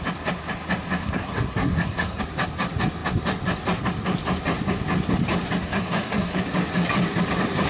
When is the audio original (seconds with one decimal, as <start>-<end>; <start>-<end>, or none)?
0.0-1.0; 2.2-5.6; 6.4-7.7